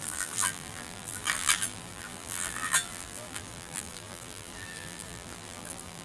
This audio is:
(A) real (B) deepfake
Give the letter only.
B